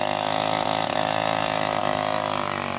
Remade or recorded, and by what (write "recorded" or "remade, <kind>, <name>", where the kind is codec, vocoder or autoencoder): recorded